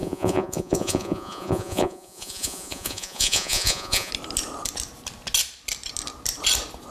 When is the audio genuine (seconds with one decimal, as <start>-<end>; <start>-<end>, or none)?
4.1-6.9